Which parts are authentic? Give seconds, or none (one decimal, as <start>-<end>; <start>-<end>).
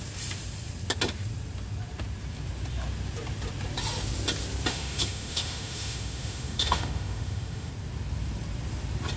0.0-4.7; 7.7-9.2